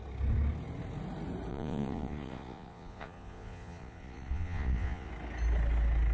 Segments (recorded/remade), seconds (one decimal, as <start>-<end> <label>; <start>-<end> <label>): 0.0-1.5 recorded; 1.5-5.1 remade; 5.1-6.1 recorded